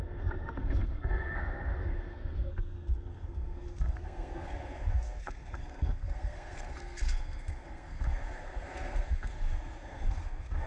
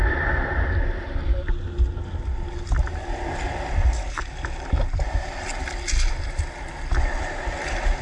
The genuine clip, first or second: second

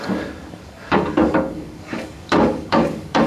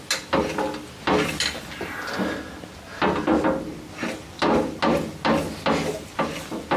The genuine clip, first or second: second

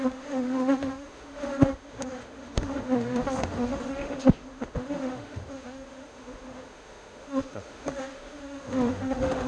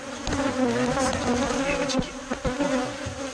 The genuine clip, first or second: second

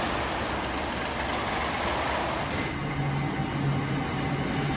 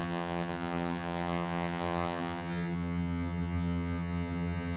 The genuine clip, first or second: first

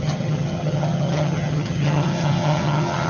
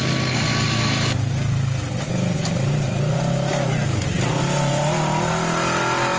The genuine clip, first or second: second